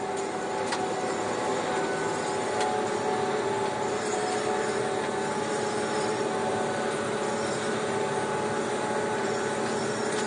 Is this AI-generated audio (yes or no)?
no